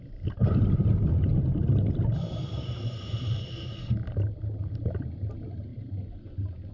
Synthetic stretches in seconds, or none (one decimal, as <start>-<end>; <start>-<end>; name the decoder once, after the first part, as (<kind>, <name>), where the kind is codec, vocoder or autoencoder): 5.7-6.3 (vocoder, BigVGAN v2)